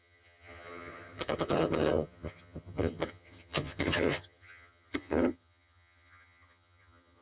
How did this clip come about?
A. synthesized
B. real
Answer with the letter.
A